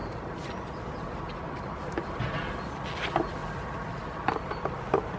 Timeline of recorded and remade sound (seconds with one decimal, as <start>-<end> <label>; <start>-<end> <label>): 0.0-5.2 recorded